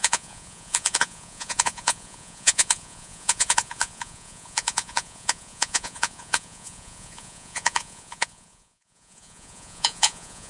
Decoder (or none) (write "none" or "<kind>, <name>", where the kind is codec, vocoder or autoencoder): vocoder, Vocos